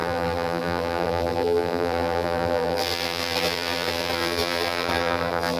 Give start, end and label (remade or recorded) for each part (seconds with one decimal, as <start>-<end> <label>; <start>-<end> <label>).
0.0-5.6 remade